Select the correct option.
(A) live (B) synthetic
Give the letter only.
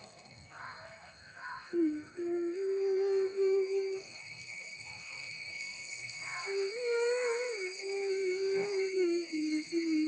B